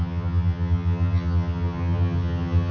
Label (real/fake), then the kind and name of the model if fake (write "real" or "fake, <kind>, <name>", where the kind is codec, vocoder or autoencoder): fake, vocoder, HiFi-GAN